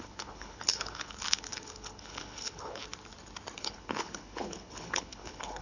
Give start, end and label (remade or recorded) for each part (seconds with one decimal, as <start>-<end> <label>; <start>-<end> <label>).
0.0-2.8 remade; 2.8-3.6 recorded; 3.6-5.6 remade